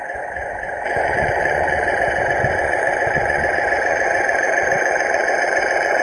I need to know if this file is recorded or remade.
remade